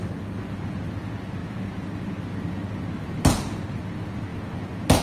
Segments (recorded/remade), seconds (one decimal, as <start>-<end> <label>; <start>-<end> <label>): 0.0-1.4 recorded; 1.4-2.1 remade; 2.1-3.0 recorded; 3.0-3.8 remade; 3.8-5.0 recorded